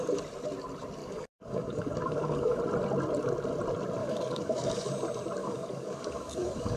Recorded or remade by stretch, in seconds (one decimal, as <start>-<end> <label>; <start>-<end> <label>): 0.0-1.0 recorded; 1.0-2.6 remade; 2.6-4.0 recorded; 4.0-4.9 remade; 4.9-5.4 recorded; 5.4-6.8 remade